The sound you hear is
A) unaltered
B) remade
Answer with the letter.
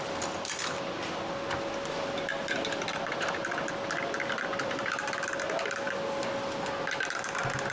A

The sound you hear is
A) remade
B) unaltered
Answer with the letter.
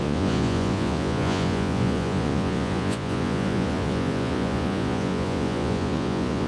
A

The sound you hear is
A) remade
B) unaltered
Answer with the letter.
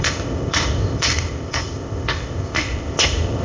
A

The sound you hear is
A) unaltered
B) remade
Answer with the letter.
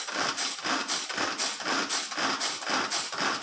A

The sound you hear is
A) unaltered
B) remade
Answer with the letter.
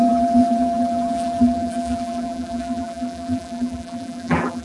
B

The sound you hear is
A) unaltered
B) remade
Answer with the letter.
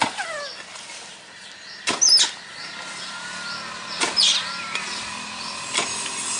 A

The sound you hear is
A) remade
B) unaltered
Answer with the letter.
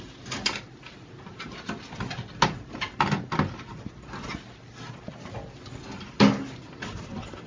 B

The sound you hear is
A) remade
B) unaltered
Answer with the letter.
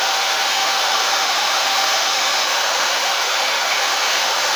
A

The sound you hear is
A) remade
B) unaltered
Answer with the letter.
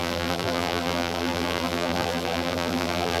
A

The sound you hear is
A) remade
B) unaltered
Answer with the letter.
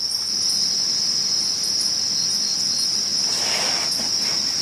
B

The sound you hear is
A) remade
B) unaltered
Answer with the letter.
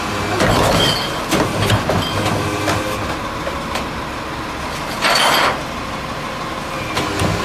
B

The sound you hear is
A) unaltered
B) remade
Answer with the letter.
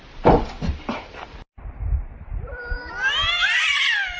B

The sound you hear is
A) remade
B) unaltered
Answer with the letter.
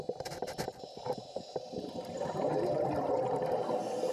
B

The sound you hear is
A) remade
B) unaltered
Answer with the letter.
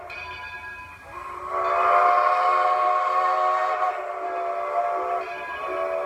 B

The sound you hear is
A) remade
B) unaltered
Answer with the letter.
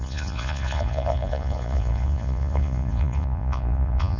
A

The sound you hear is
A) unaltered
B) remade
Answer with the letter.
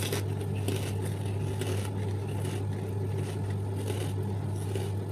A